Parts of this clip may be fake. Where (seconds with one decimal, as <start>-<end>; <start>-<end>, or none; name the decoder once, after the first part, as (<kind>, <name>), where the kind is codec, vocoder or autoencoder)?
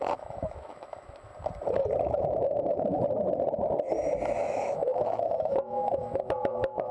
0.0-1.3 (autoencoder, DAC-VAE); 2.0-2.9; 4.4-6.9